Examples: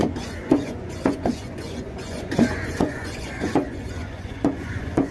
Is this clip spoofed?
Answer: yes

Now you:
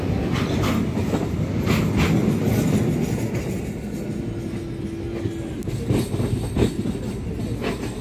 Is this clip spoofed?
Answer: no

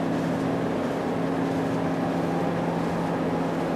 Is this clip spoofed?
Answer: no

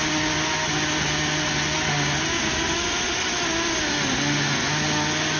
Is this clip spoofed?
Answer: no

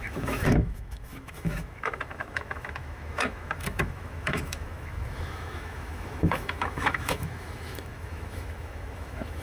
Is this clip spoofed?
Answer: yes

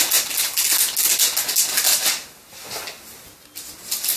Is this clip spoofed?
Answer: no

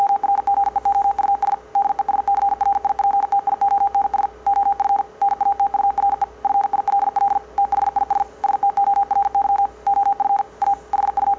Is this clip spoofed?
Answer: no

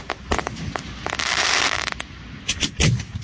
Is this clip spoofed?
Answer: no